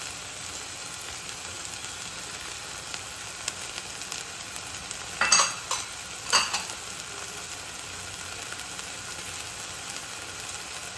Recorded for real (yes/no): yes